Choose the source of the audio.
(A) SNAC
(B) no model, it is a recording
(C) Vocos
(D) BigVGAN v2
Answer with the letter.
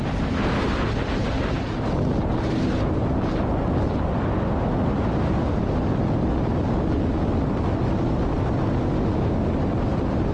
B